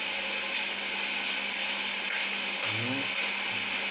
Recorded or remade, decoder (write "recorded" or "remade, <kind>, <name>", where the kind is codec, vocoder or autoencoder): recorded